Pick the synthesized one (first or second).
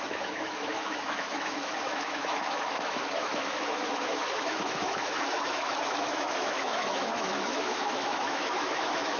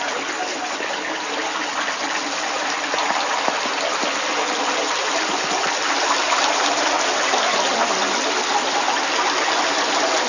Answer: first